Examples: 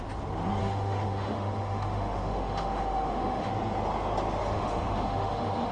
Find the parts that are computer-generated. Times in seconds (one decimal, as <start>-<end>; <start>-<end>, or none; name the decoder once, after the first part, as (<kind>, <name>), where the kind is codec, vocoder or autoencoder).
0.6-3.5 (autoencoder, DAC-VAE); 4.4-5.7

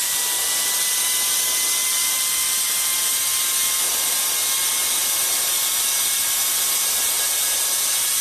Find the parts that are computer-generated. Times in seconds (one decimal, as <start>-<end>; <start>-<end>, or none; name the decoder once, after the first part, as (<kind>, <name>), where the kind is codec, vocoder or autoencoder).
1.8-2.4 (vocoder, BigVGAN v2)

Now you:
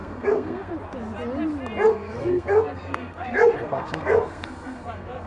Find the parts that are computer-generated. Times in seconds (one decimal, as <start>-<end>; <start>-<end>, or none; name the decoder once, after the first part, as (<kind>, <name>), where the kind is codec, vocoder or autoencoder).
0.0-0.7 (codec, SNAC); 1.9-5.3

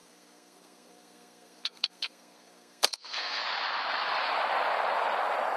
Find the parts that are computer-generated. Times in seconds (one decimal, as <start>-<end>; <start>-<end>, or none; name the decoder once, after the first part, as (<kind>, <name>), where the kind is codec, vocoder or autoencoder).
0.0-3.4 (codec, SNAC)

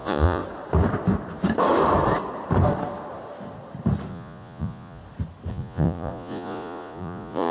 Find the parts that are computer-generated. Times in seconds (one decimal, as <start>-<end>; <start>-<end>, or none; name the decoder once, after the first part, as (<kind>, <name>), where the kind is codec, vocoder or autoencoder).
0.0-0.4 (vocoder, Vocos); 4.1-5.0; 5.5-7.5